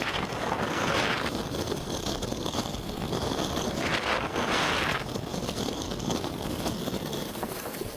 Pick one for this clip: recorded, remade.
remade